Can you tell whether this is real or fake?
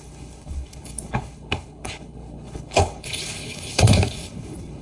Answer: fake